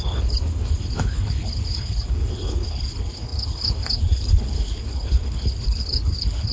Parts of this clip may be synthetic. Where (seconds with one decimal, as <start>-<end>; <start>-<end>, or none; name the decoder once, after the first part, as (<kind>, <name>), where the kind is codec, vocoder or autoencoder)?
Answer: 0.0-6.5 (codec, HILCodec)